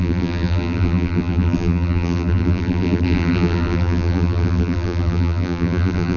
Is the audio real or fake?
fake